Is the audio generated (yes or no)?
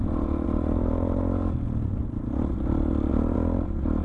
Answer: no